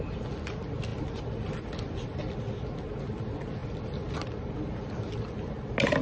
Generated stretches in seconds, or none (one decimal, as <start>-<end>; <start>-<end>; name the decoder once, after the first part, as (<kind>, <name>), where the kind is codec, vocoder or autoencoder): none

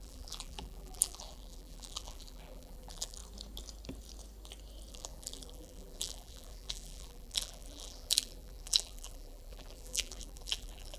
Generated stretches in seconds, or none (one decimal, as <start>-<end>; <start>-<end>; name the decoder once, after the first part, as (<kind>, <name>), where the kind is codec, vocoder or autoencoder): 0.0-3.2 (vocoder, BigVGAN v2); 4.9-11.0

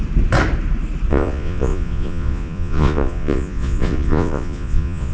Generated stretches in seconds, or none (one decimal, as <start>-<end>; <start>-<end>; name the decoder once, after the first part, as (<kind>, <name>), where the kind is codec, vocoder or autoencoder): 1.1-5.1 (vocoder, Vocos)

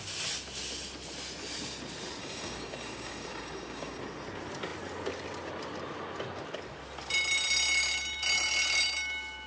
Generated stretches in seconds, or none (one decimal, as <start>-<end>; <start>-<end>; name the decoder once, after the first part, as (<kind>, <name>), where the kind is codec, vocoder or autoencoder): 2.2-4.0 (codec, DAC)